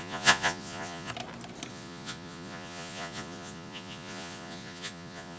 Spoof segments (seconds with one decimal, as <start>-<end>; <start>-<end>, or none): 0.0-1.1; 1.7-5.4